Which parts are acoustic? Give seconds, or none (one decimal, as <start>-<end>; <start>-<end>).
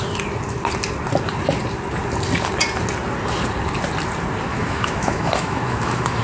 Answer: 0.0-4.5